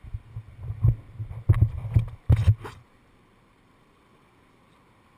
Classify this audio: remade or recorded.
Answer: recorded